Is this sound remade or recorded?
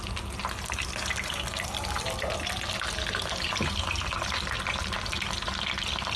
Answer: recorded